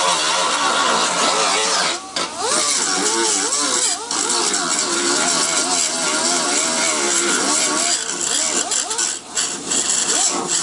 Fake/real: real